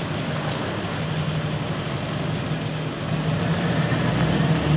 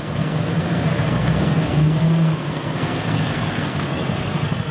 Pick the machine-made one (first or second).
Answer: second